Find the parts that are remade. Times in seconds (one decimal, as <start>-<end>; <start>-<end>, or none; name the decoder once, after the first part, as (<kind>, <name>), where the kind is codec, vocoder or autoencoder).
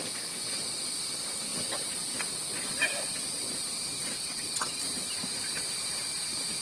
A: 4.0-4.8 (vocoder, WaveNeXt)